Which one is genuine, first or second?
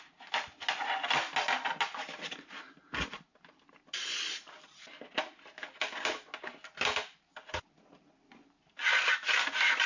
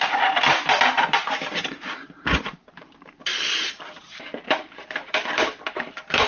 first